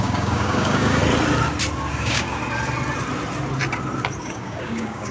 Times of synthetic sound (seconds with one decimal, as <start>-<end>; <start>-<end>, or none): 0.0-1.0; 1.9-2.4; 4.2-5.1